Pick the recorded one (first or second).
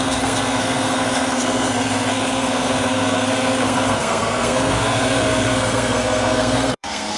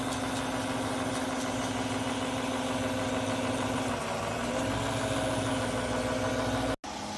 second